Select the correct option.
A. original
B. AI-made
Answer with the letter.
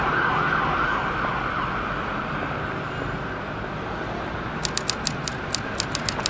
A